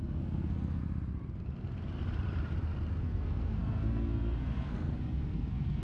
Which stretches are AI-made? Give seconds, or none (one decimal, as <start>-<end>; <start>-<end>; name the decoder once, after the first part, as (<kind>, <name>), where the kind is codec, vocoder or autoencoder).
0.0-0.8 (codec, SNAC); 2.9-5.8